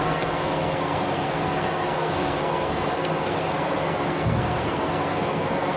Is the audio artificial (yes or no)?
yes